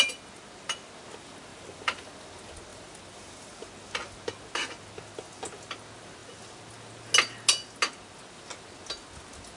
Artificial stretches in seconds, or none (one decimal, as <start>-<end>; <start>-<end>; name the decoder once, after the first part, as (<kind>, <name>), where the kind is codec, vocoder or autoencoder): 1.5-2.1 (vocoder, BigVGAN v2); 2.7-3.5